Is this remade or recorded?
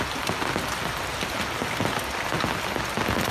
recorded